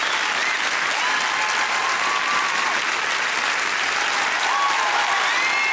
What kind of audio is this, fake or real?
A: real